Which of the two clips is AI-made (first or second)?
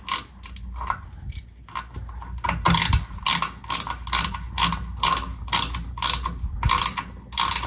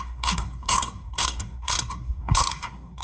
second